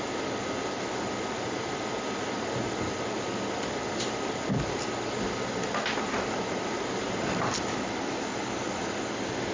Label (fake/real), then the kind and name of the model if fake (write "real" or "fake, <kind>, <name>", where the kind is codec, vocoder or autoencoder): real